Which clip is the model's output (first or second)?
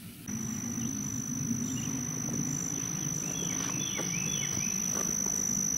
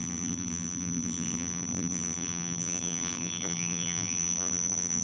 second